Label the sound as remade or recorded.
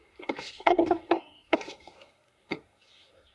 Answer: remade